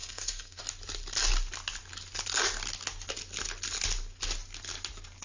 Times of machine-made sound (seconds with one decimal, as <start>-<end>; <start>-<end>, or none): 0.0-0.6